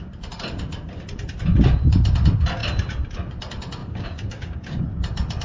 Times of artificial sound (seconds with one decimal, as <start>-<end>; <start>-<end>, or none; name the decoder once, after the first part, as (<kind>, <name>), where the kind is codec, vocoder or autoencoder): 3.8-4.8 (codec, DAC)